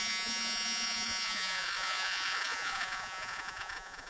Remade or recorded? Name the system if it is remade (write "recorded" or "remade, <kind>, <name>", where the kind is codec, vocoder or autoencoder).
remade, vocoder, Vocos